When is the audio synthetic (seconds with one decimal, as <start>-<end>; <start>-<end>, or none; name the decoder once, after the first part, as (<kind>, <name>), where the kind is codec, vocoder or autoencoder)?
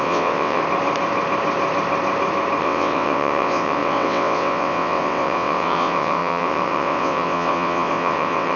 0.0-0.6 (vocoder, WaveNeXt); 2.6-8.6